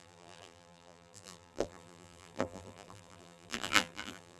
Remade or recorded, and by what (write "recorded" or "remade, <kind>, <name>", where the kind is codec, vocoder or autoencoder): remade, vocoder, BigVGAN v2